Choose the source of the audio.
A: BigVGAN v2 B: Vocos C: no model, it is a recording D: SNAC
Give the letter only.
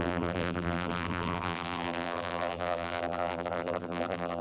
A